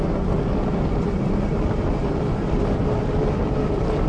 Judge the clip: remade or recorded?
recorded